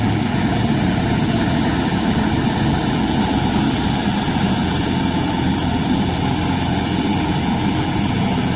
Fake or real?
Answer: fake